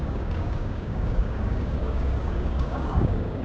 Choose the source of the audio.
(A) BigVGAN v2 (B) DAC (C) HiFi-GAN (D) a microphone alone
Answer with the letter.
B